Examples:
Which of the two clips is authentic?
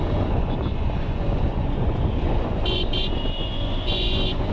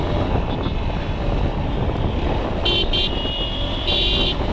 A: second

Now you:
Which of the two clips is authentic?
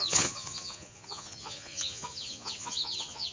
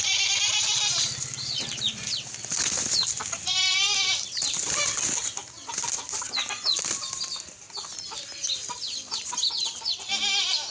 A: second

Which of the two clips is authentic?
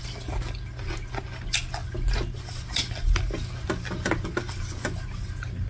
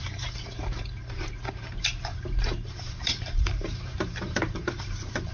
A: first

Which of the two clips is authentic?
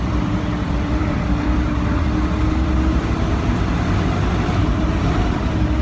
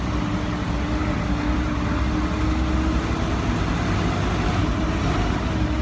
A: second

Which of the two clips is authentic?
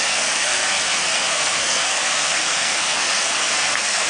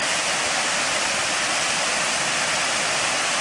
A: second